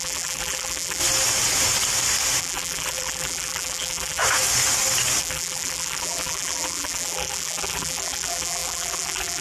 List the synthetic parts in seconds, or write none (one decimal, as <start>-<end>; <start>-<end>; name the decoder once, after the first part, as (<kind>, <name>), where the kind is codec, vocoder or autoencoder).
0.0-1.0 (vocoder, BigVGAN v2); 2.4-4.2; 5.2-9.4